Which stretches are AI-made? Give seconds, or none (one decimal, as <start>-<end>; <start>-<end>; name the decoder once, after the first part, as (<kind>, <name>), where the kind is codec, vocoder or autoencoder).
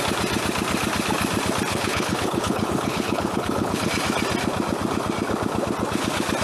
1.7-3.9 (codec, HILCodec)